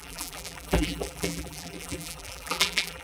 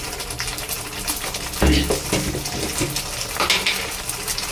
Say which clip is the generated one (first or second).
first